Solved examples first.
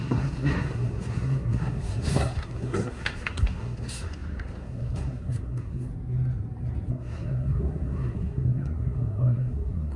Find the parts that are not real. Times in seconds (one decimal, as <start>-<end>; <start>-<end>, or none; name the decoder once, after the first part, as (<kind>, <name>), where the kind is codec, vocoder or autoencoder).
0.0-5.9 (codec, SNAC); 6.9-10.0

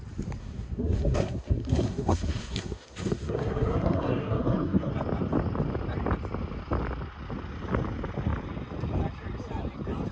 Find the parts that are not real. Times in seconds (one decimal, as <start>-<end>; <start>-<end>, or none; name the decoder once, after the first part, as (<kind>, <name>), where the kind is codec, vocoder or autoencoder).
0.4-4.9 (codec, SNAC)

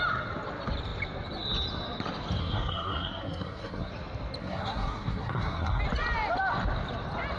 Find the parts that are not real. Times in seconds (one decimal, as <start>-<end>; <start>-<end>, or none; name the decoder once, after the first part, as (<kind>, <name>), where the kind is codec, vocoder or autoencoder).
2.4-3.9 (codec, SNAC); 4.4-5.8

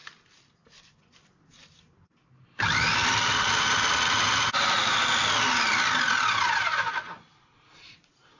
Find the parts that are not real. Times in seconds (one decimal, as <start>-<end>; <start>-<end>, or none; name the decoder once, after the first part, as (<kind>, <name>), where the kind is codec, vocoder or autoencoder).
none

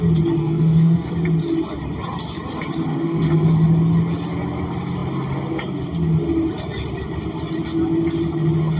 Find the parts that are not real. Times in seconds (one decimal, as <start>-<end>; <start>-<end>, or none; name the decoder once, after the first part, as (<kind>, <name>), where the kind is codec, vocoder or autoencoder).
0.4-1.1 (codec, SNAC); 2.9-3.5

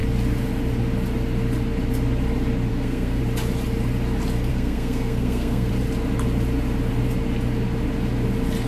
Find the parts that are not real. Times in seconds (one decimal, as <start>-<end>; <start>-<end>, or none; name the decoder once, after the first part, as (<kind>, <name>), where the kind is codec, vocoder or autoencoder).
2.7-3.2 (codec, SNAC); 4.5-5.7

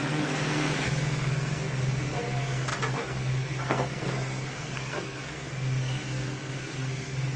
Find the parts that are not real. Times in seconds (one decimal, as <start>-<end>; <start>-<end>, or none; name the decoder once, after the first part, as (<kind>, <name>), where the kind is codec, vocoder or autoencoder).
0.0-7.4 (codec, SNAC)

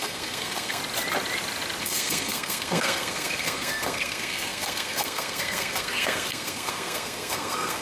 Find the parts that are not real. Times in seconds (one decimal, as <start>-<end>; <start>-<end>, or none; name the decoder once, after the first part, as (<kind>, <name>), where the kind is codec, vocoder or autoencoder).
0.0-0.8 (codec, SNAC); 1.8-7.8